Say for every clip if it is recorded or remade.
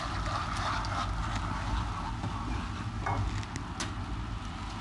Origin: recorded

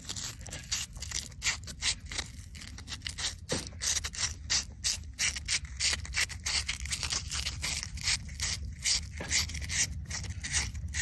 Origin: recorded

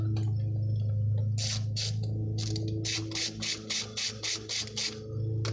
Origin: recorded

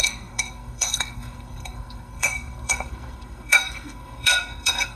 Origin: remade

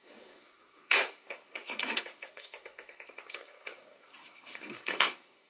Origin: remade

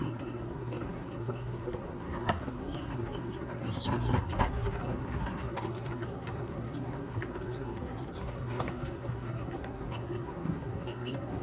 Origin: remade